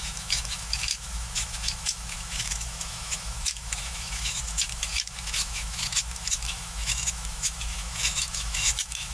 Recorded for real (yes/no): no